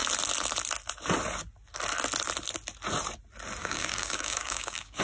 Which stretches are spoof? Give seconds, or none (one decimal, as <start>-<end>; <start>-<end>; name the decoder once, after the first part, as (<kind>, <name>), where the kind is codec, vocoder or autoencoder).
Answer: 3.6-5.0 (codec, DAC)